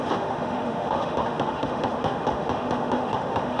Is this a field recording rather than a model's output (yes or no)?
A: no